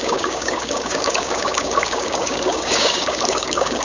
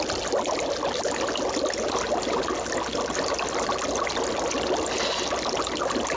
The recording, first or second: second